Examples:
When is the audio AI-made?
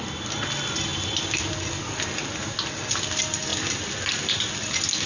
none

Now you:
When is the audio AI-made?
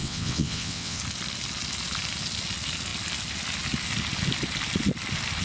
0.0-1.0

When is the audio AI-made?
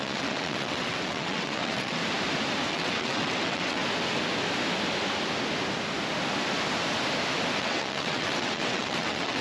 0.0-2.0; 2.7-3.8; 7.6-9.4